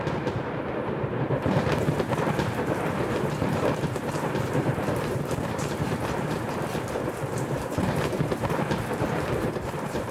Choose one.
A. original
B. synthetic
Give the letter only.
B